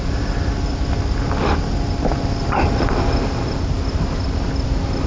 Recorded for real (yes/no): yes